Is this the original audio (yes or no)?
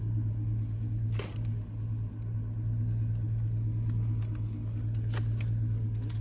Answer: yes